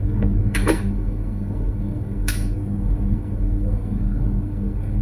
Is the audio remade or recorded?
remade